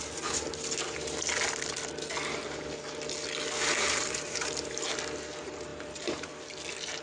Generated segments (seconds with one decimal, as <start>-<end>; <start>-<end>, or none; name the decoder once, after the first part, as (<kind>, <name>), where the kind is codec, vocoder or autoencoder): 3.6-4.7 (vocoder, BigVGAN v2); 5.7-6.4

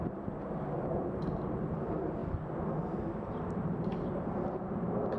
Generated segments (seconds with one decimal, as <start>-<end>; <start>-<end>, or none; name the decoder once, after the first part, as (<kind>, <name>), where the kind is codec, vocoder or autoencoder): 0.0-2.2 (vocoder, BigVGAN v2); 3.3-5.2